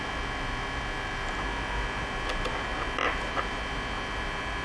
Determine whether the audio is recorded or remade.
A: recorded